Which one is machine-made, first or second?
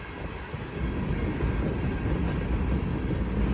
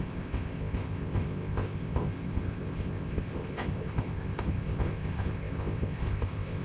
second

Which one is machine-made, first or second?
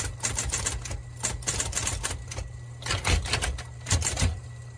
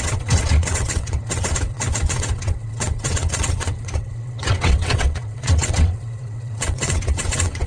second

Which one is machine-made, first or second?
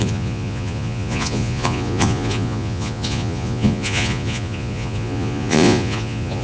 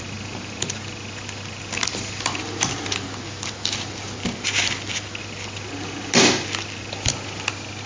first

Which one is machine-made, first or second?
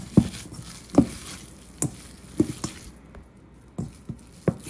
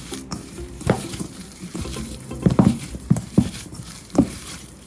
second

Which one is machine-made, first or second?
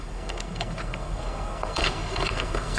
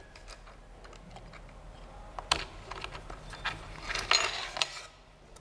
first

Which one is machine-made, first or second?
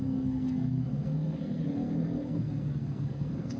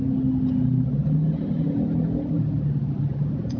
first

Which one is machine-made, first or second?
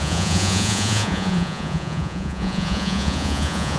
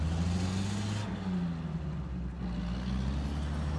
first